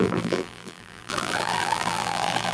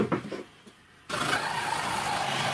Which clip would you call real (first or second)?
second